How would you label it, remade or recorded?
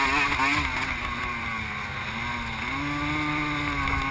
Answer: recorded